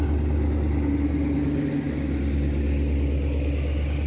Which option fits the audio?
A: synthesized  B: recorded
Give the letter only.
B